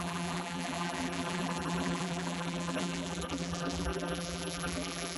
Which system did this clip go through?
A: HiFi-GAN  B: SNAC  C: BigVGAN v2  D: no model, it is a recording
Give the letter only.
C